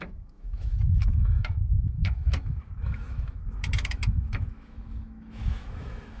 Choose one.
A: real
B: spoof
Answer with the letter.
B